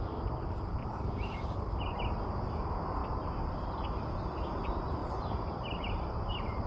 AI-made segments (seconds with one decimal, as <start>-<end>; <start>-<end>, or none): 0.8-2.3; 5.0-6.7